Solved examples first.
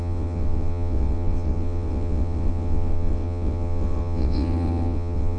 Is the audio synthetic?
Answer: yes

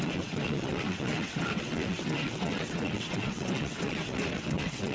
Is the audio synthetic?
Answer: yes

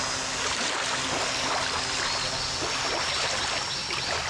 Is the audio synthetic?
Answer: no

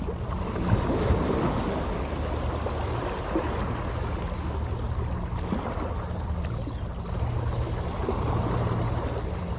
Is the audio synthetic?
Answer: no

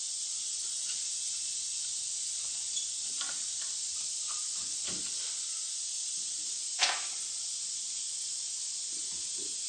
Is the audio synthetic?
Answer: no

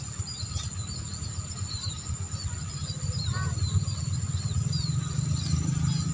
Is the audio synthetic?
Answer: no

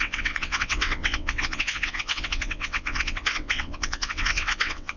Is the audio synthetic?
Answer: yes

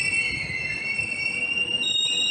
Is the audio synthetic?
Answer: no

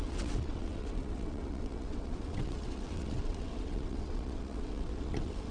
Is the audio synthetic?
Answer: yes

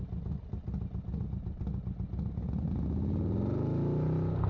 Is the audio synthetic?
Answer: no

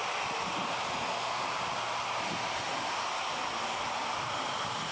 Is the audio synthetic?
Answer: no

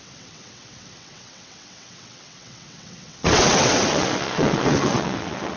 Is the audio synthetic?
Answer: yes